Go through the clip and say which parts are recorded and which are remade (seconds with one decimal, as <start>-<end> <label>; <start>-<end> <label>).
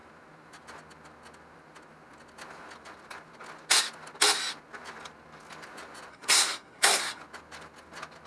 0.0-6.1 recorded; 6.1-7.2 remade; 7.2-8.3 recorded